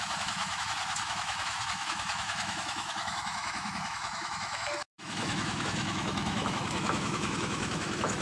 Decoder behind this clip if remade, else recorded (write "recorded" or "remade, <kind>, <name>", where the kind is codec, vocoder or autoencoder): remade, autoencoder, DAC-VAE